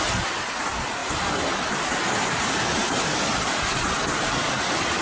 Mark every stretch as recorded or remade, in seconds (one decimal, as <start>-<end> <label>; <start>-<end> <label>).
0.0-5.0 recorded